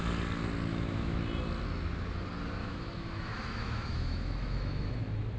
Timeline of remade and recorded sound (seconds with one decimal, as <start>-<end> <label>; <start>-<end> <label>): 0.0-0.7 recorded; 0.7-1.2 remade; 1.2-2.6 recorded; 2.6-5.0 remade; 5.0-5.4 recorded